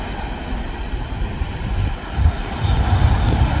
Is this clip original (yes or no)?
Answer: yes